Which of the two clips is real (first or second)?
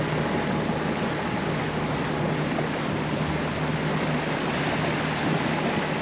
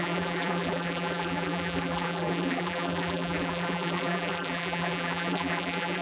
first